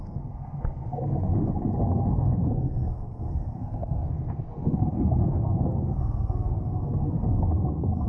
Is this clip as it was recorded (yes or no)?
no